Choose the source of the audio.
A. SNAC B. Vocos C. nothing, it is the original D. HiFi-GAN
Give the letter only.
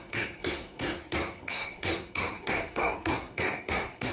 A